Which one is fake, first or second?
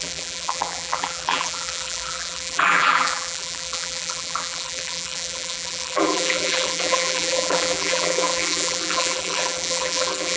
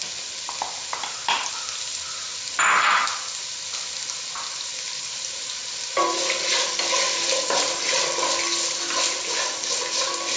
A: first